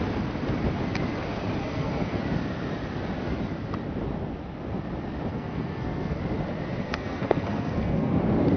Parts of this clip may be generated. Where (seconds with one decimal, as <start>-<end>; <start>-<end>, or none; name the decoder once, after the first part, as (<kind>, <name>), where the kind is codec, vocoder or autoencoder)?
1.6-2.2 (codec, SNAC); 5.3-6.2; 6.8-8.2